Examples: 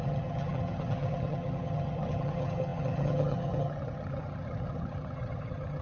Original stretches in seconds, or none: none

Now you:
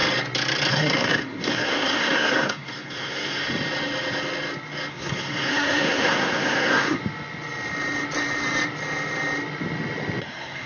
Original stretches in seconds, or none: 0.0-0.7; 3.4-4.9; 7.0-10.2

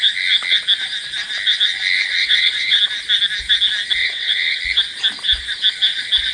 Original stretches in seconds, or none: 0.0-2.2; 2.8-4.0; 4.6-6.3

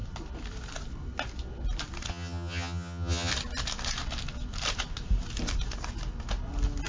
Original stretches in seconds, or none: 0.0-2.1; 3.3-6.9

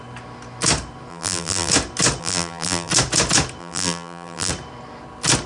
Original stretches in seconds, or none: 0.0-1.1; 1.7-2.2; 2.9-3.6; 4.5-5.5

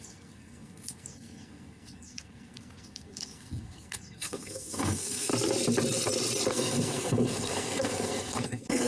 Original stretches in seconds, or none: 5.3-6.5

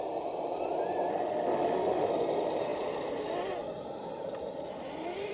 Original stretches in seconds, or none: 0.0-1.1; 2.1-5.3